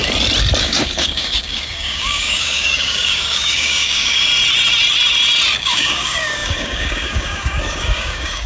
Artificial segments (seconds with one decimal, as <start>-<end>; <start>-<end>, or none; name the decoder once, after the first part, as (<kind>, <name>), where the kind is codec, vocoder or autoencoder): 0.6-4.3 (codec, DAC); 5.6-8.5